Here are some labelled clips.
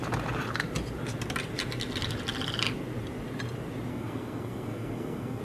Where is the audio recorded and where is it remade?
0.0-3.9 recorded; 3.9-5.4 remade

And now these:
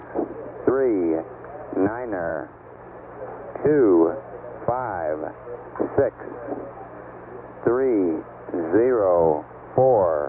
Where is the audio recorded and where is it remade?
0.0-2.3 recorded; 2.3-2.8 remade; 2.8-10.3 recorded

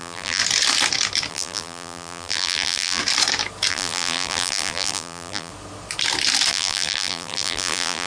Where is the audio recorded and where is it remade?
0.0-0.4 remade; 0.4-1.3 recorded; 1.3-3.0 remade; 3.0-3.7 recorded; 3.7-5.5 remade; 5.5-6.5 recorded; 6.5-8.1 remade

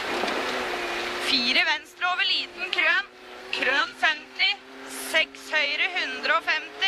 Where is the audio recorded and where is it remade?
0.0-2.5 recorded; 2.5-3.0 remade; 3.0-3.4 recorded; 3.4-4.6 remade; 4.6-6.9 recorded

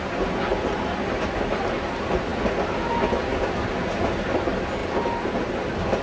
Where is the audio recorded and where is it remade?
0.0-6.0 recorded

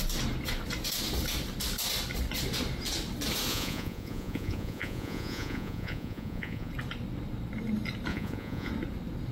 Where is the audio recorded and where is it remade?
0.0-3.5 recorded; 3.5-6.7 remade; 6.7-8.1 recorded; 8.1-8.7 remade; 8.7-9.3 recorded